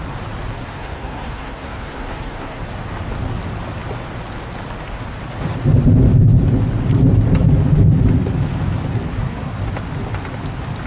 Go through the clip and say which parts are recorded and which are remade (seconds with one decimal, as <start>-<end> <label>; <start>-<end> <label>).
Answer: 0.0-0.6 recorded; 0.6-2.6 remade; 2.6-9.1 recorded; 9.1-9.6 remade; 9.6-10.9 recorded